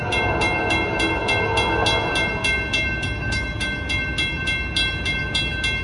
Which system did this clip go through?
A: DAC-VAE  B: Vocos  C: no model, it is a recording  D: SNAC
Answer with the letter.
C